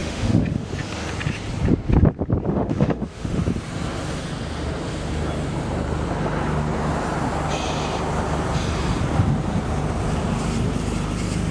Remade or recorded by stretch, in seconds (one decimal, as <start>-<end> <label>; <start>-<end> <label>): 0.0-0.7 remade; 0.7-2.5 recorded; 2.5-3.4 remade; 3.4-11.5 recorded